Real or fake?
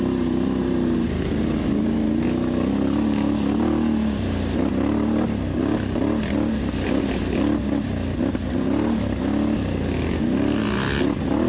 real